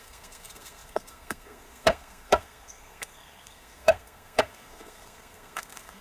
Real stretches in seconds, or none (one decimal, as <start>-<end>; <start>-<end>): none